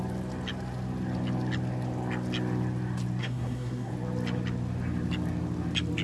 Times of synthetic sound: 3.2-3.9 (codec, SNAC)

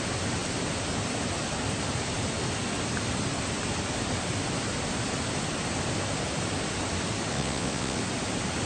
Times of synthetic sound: 7.3-8.0 (vocoder, WaveNeXt)

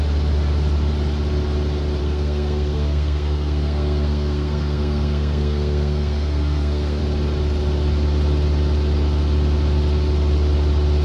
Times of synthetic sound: 2.0-7.0 (codec, SNAC)